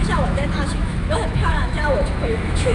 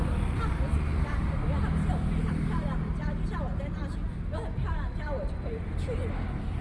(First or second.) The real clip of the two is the second